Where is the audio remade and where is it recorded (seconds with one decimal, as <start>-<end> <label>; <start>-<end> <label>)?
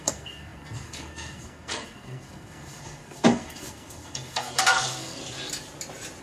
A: 0.0-5.2 remade; 5.2-6.2 recorded